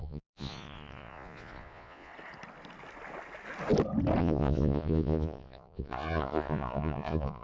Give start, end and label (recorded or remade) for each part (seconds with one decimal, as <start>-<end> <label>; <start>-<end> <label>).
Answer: 0.0-2.1 remade; 2.1-4.2 recorded; 4.2-7.4 remade